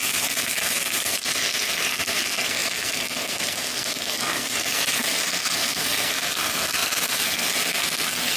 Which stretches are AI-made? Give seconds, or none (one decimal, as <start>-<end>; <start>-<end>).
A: 0.0-8.4